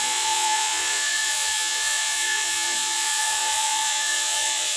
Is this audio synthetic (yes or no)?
yes